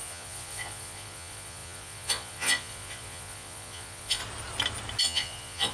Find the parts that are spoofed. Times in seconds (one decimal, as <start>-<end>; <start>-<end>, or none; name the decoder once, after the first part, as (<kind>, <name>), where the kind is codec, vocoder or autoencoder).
0.0-4.2 (vocoder, Vocos); 5.0-5.7